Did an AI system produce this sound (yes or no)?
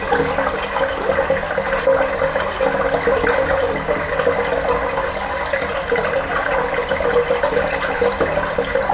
no